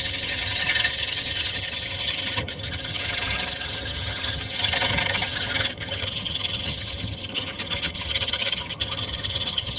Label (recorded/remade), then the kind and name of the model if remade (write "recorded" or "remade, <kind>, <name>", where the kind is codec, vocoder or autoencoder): remade, vocoder, HiFi-GAN